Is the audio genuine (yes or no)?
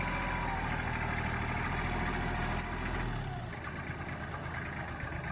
yes